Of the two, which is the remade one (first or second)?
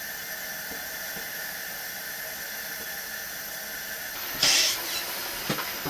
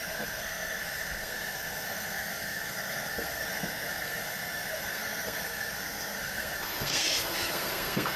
second